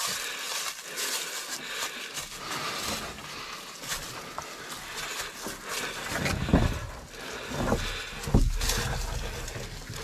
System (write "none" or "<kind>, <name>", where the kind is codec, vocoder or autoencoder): none